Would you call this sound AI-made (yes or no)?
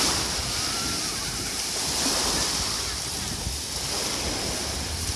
no